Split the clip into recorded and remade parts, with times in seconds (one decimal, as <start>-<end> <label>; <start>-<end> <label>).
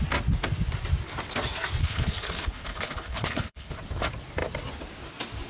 0.0-1.8 recorded; 1.8-3.7 remade; 3.7-5.5 recorded